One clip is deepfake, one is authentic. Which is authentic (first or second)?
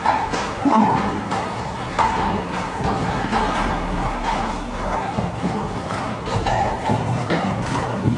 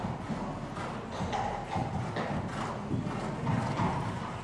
second